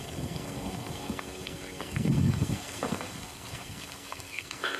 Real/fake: fake